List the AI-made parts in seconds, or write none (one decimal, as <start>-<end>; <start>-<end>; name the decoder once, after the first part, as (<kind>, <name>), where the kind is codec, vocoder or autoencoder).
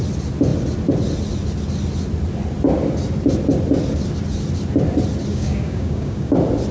5.3-6.3 (codec, DAC)